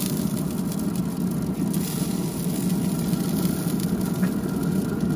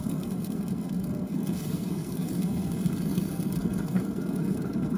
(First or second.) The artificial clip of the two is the second